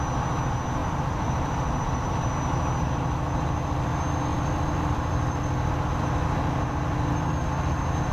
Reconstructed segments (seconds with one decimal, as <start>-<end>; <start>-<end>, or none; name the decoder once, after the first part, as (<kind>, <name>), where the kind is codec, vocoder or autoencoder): 0.8-2.3 (vocoder, BigVGAN v2); 4.3-5.7